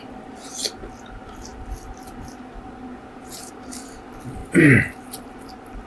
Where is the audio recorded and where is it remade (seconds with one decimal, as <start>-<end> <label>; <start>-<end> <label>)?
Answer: 0.0-2.9 recorded; 2.9-3.5 remade; 3.5-5.9 recorded